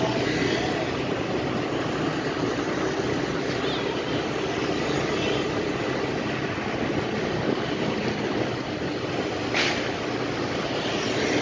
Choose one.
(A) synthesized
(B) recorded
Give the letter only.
B